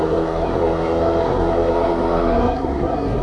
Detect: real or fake fake